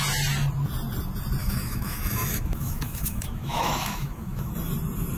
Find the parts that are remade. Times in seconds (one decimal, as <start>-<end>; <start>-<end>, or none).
1.4-4.5

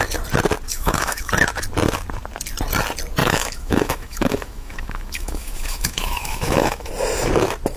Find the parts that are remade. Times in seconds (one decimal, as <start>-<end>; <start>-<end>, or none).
0.7-1.3; 3.2-6.9

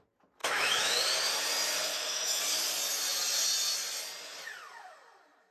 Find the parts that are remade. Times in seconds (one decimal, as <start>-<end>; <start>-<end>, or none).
0.4-1.0; 1.9-2.4

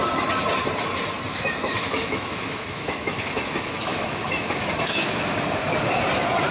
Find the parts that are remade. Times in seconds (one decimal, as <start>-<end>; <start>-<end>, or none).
1.3-5.2

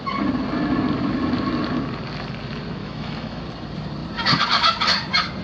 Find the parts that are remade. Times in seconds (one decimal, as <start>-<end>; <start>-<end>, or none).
2.8-3.4

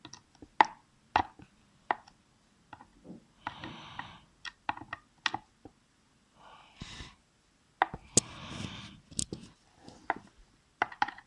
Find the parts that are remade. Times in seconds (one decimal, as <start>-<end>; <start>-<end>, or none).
none